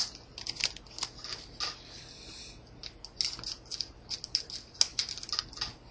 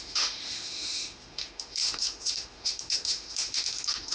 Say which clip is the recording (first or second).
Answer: first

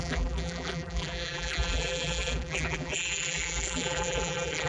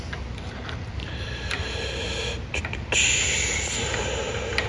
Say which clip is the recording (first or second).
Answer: second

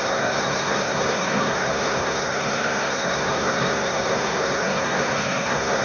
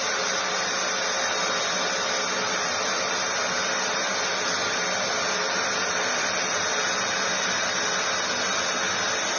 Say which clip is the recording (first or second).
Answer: second